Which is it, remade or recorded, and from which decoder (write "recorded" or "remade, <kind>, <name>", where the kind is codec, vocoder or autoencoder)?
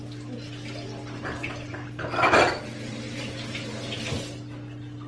recorded